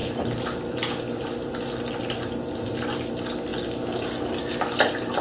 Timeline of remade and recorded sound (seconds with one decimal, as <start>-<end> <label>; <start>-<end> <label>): 0.0-5.2 recorded